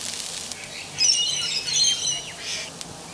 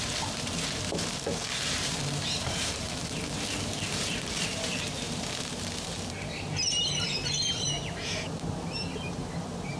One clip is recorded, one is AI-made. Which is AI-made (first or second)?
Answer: second